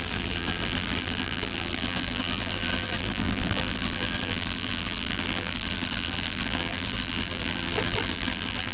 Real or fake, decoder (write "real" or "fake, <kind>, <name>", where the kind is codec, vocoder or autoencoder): fake, vocoder, BigVGAN v2